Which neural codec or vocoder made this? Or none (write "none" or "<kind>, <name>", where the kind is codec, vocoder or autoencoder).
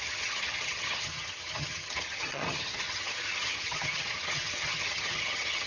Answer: vocoder, HiFi-GAN